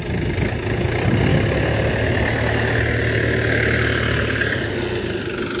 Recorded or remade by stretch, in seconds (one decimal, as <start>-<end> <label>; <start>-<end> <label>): 0.0-5.6 recorded